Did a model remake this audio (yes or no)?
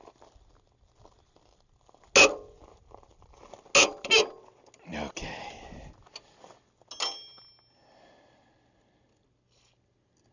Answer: no